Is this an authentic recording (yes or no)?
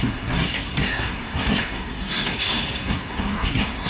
no